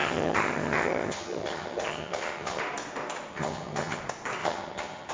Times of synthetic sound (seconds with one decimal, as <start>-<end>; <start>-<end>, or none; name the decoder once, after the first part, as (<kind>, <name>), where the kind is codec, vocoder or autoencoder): 0.0-2.6 (vocoder, HiFi-GAN); 3.3-4.0; 4.4-5.1